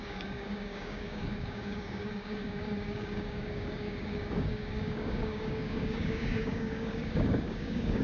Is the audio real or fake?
fake